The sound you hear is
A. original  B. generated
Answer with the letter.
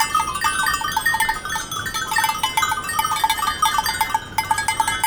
A